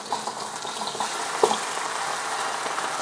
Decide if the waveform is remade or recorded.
recorded